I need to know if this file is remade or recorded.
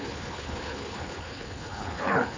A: remade